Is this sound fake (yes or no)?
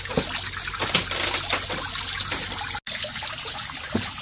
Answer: no